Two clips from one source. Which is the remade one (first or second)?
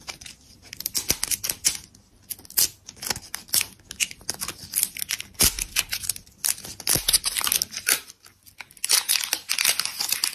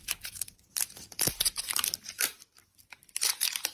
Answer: second